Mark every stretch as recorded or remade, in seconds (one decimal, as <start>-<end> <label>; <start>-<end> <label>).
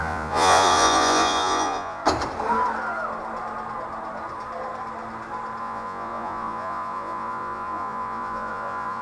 0.0-2.0 remade; 2.0-5.6 recorded; 5.6-9.0 remade